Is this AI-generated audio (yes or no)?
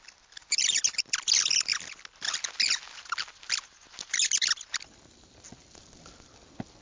no